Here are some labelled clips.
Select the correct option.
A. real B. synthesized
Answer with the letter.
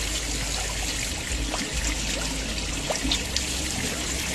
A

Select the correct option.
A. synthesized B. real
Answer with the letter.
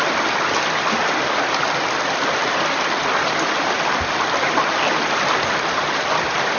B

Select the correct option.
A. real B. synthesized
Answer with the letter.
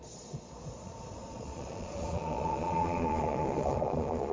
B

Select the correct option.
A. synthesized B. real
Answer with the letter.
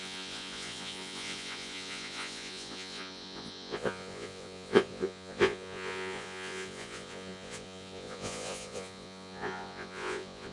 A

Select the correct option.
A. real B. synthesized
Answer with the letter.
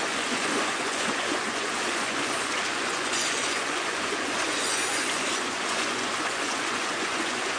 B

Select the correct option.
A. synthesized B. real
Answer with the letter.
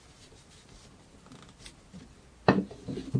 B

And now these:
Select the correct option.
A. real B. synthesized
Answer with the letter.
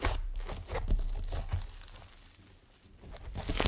A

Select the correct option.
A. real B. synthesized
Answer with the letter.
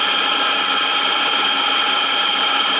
A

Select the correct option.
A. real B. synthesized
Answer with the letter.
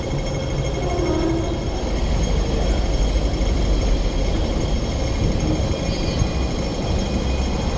A